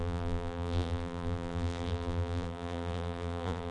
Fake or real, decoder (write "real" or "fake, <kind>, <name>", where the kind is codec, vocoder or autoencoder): fake, vocoder, BigVGAN v2